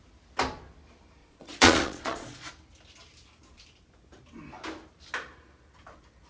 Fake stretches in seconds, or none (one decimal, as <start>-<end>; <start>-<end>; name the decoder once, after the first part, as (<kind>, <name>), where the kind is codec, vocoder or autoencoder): 1.2-2.5 (vocoder, Vocos)